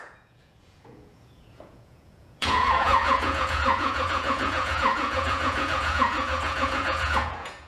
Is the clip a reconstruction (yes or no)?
yes